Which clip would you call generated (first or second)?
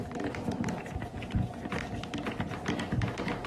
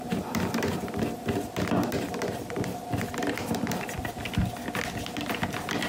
first